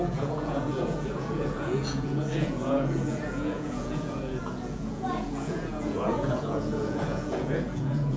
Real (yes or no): no